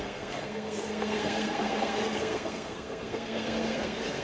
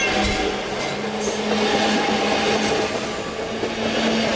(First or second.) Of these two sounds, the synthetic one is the first